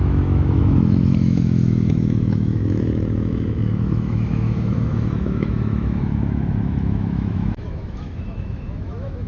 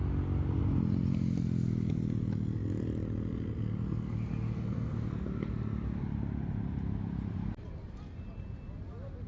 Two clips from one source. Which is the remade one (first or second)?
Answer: first